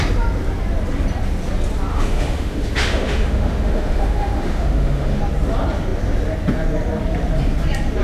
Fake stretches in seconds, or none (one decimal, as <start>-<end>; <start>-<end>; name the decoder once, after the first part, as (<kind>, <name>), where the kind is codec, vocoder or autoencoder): 1.9-5.2 (autoencoder, DAC-VAE)